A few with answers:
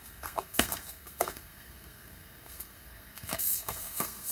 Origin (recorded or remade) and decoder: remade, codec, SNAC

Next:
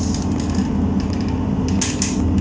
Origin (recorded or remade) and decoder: recorded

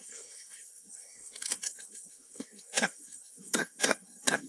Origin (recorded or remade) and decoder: remade, codec, SNAC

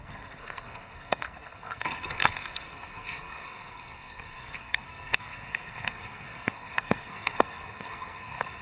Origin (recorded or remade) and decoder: remade, codec, SNAC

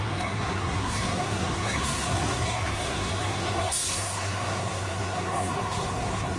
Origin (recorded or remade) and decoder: remade, codec, SNAC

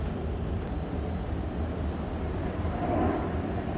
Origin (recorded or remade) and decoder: recorded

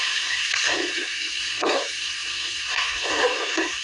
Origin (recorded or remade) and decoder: remade, codec, SNAC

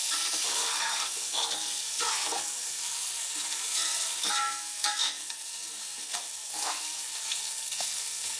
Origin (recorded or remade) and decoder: remade, codec, SNAC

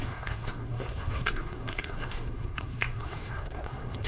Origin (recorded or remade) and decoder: remade, codec, SNAC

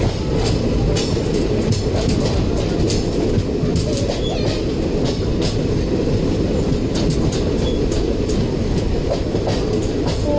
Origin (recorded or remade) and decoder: recorded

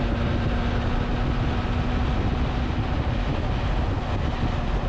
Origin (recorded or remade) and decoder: recorded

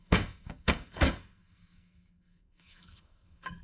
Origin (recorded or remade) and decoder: remade, codec, SNAC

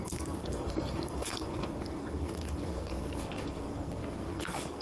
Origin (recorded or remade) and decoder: remade, codec, SNAC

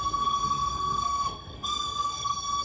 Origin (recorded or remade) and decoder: remade, codec, SNAC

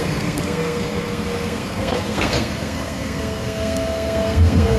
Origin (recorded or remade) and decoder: remade, codec, SNAC